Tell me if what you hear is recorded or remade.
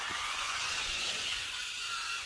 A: remade